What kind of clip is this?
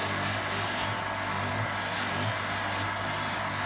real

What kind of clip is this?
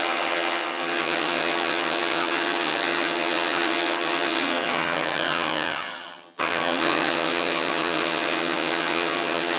fake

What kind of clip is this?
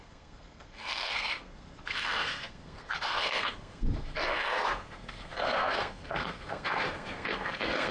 fake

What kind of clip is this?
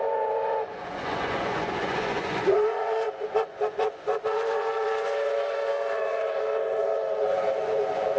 fake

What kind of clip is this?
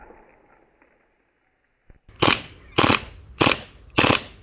real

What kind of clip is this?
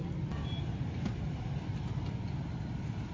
real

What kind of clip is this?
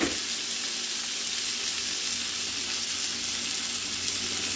real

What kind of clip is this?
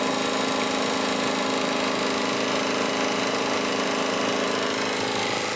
real